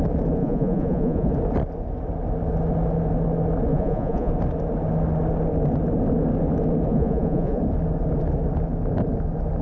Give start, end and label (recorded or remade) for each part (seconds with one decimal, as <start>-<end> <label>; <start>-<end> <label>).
0.0-0.4 recorded; 0.4-1.3 remade; 1.3-3.7 recorded; 3.7-4.3 remade; 4.3-6.9 recorded; 6.9-7.6 remade; 7.6-9.6 recorded